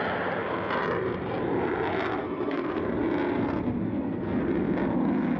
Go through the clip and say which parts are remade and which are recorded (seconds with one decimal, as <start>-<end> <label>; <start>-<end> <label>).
0.0-2.2 recorded; 2.2-2.8 remade; 2.8-3.8 recorded; 3.8-4.4 remade; 4.4-5.4 recorded